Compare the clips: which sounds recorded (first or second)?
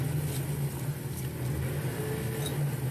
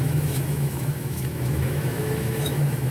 first